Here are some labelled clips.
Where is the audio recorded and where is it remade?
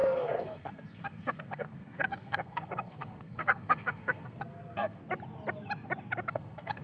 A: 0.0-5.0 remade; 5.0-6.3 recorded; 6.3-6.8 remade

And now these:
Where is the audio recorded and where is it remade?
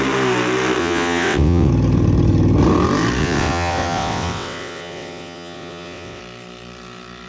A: 0.0-0.8 recorded; 0.8-1.7 remade; 1.7-3.2 recorded; 3.2-6.2 remade; 6.2-7.3 recorded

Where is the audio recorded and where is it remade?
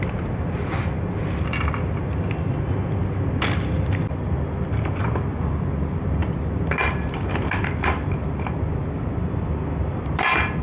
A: 0.0-10.6 recorded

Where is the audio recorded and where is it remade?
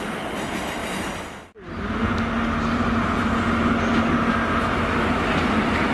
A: 0.0-5.9 recorded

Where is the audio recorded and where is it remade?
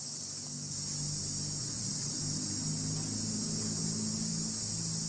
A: 0.0-1.6 recorded; 1.6-2.1 remade; 2.1-5.1 recorded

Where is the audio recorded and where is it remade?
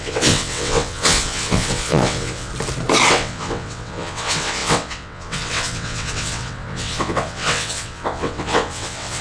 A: 0.0-2.5 remade; 2.5-3.1 recorded; 3.1-9.2 remade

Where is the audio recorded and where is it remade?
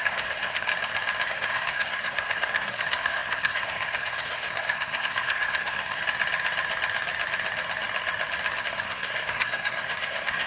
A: 0.0-0.7 remade; 0.7-1.3 recorded; 1.3-6.0 remade; 6.0-8.6 recorded; 8.6-10.5 remade